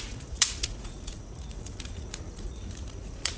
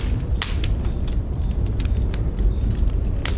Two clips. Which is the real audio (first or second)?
second